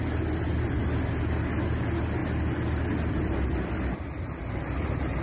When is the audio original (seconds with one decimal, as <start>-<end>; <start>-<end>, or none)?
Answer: 0.0-5.2